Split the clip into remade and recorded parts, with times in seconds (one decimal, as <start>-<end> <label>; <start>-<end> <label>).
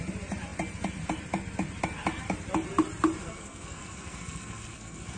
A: 0.0-3.2 recorded; 3.2-5.2 remade